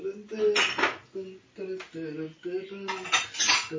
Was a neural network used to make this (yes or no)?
no